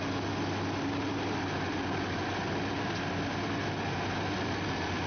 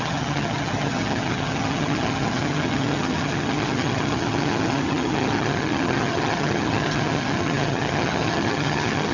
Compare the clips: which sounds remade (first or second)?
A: second